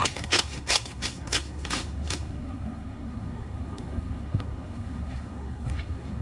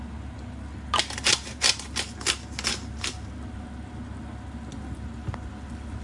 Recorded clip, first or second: second